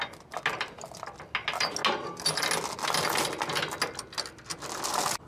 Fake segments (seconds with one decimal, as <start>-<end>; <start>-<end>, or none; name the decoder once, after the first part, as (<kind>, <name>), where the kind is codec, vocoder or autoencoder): none